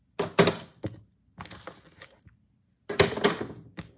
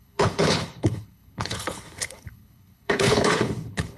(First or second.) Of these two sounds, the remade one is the second